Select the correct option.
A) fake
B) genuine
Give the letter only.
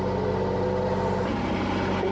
B